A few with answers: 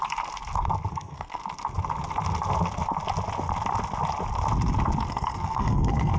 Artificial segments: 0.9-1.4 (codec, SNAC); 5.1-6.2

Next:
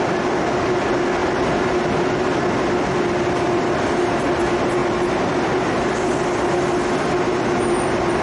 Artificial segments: none

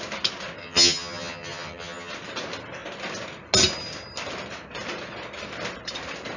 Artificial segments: 0.6-2.1 (vocoder, HiFi-GAN)

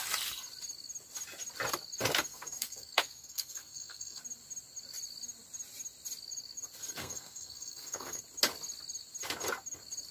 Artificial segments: 2.3-4.2 (codec, SNAC); 7.0-8.2

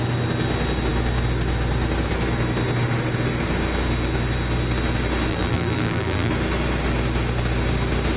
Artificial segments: 5.3-6.3 (vocoder, BigVGAN v2)